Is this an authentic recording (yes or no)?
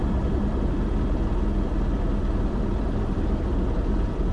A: no